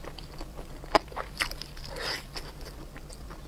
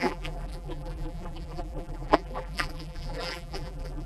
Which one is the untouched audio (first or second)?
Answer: first